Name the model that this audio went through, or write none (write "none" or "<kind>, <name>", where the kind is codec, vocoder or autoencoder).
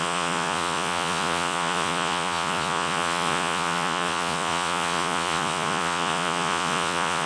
vocoder, Vocos